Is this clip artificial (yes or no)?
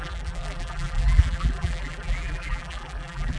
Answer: yes